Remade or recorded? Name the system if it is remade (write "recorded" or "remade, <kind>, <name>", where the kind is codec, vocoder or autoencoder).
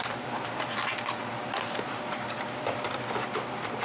remade, vocoder, BigVGAN v2